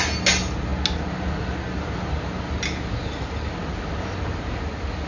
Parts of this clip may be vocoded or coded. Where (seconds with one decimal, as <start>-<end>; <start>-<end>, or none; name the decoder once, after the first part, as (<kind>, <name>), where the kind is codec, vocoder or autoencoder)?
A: none